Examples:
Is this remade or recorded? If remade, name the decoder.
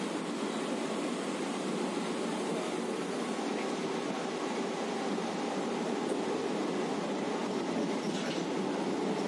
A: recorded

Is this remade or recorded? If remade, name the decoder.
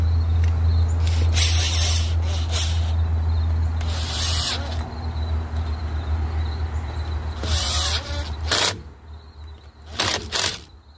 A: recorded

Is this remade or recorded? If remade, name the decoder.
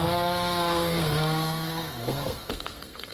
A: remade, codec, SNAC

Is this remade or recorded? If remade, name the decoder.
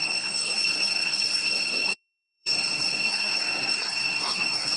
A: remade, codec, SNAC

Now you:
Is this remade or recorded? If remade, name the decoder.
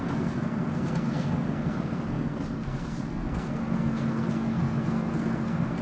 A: remade, codec, SNAC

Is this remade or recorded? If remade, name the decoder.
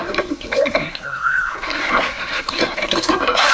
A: remade, codec, SNAC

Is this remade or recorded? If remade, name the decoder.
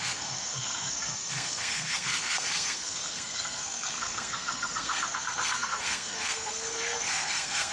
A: remade, codec, SNAC